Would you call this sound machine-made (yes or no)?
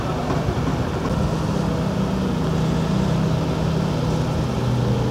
no